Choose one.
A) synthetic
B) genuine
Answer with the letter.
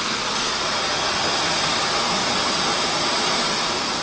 B